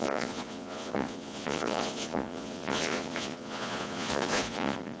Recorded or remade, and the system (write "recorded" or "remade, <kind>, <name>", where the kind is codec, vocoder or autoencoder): remade, vocoder, Vocos